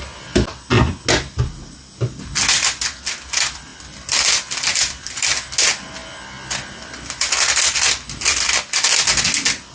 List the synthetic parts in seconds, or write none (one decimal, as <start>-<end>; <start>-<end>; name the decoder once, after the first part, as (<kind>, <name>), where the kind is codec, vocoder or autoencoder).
3.7-4.3 (vocoder, BigVGAN v2)